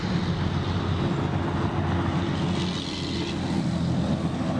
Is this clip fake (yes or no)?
no